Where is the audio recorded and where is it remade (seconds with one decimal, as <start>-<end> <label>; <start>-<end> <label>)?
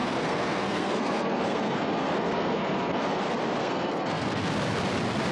0.0-3.2 remade; 3.2-3.6 recorded; 3.6-4.4 remade; 4.4-5.3 recorded